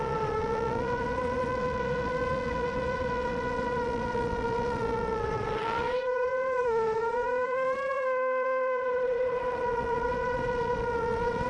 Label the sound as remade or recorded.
remade